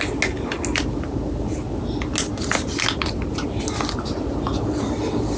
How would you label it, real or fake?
real